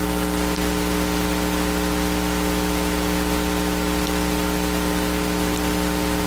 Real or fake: real